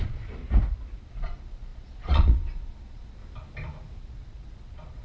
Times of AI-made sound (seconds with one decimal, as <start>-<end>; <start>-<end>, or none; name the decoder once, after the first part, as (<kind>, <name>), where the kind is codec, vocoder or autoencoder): 0.0-0.4 (vocoder, Vocos); 1.1-3.2; 4.0-5.0